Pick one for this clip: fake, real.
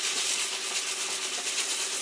real